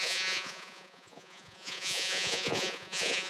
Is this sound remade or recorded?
remade